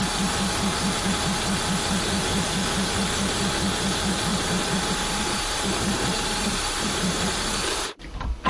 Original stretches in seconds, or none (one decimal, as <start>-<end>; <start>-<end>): 0.0-4.3; 7.2-8.5